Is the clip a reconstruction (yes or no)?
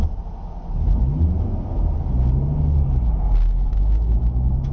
no